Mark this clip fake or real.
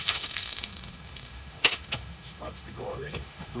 fake